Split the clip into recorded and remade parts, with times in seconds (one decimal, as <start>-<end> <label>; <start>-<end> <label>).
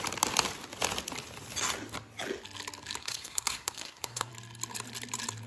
0.0-3.0 recorded; 3.0-4.3 remade; 4.3-5.5 recorded